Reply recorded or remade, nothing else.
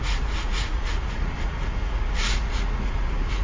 remade